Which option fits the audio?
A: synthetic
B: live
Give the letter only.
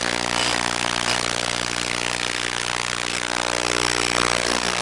B